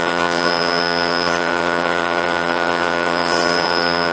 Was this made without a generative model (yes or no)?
no